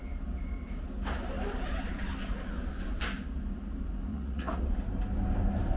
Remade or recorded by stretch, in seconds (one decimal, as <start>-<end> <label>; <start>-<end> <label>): 0.0-4.1 recorded; 4.1-4.6 remade; 4.6-5.8 recorded